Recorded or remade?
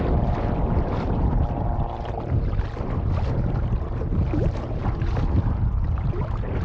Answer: recorded